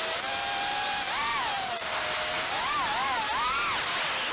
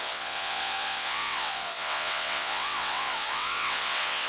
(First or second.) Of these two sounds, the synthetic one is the second